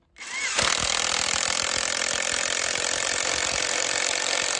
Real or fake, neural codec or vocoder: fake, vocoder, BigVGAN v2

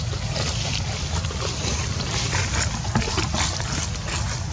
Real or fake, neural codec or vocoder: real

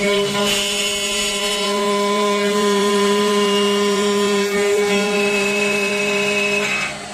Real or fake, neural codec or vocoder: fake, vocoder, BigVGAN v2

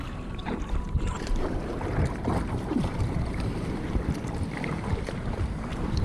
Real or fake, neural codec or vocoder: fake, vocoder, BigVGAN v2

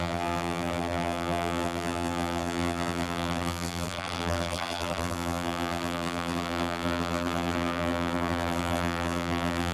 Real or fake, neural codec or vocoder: fake, vocoder, BigVGAN v2